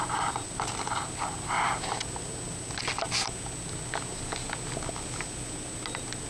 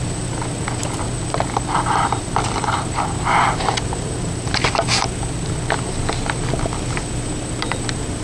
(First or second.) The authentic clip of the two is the first